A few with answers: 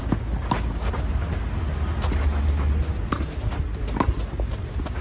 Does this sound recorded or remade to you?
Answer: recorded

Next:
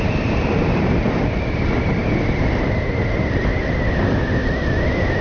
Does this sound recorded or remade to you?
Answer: recorded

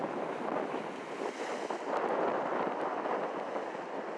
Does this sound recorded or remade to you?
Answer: recorded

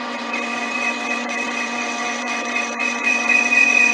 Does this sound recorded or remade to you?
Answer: remade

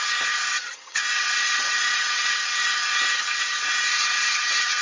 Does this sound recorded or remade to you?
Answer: remade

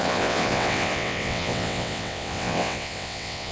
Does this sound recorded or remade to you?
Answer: remade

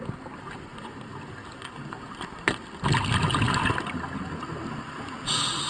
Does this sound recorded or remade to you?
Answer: recorded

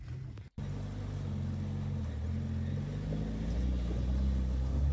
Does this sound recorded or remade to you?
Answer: recorded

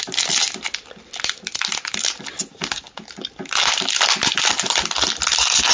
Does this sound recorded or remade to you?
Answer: recorded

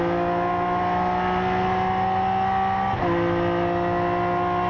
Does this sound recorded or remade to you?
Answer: recorded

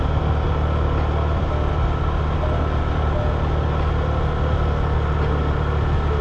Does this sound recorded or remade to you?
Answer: recorded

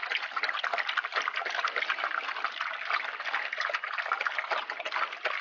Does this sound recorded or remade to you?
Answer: recorded